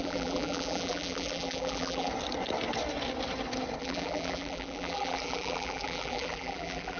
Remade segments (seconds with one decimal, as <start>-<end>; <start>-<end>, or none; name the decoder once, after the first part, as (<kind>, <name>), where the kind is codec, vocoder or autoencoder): 0.0-2.1 (vocoder, BigVGAN v2); 3.8-7.0